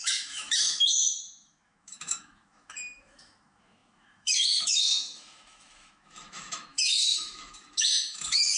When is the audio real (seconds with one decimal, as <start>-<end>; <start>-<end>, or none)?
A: none